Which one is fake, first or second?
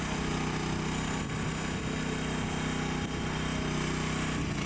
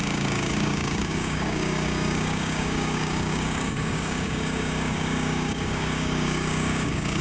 second